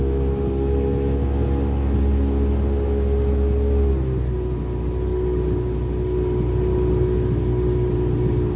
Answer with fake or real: real